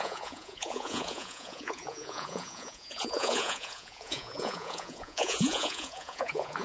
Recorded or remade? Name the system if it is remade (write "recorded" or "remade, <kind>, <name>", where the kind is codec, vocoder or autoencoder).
remade, vocoder, Vocos